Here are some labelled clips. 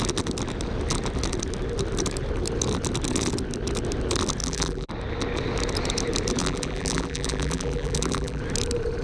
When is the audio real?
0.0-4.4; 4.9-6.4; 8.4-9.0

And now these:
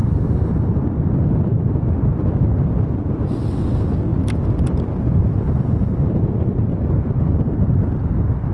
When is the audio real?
0.0-6.7; 7.7-8.5

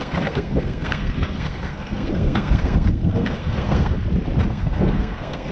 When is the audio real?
4.0-4.5